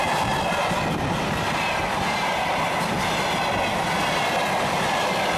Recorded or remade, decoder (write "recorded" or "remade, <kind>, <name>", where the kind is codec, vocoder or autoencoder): recorded